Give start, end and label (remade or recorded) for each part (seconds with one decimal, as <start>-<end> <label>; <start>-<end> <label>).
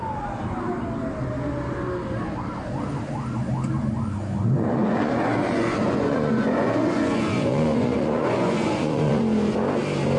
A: 0.0-4.8 recorded; 4.8-9.2 remade; 9.2-10.2 recorded